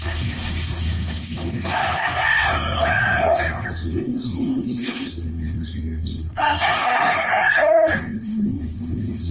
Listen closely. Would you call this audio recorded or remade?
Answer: remade